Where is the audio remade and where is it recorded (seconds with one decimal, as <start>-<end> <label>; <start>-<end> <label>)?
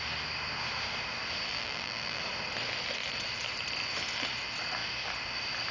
0.0-1.5 recorded; 1.5-2.2 remade; 2.2-5.7 recorded